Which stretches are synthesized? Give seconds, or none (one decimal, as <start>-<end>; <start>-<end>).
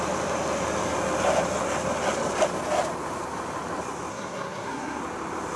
4.1-5.0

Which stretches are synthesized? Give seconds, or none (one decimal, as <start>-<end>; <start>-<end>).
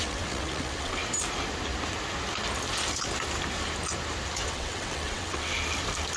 0.0-1.0; 4.5-5.5